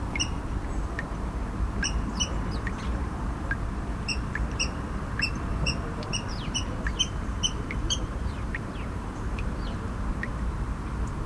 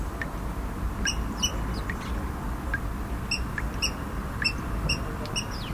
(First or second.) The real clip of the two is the second